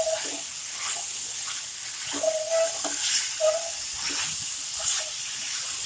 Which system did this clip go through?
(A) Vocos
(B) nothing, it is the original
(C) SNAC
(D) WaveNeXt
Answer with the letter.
B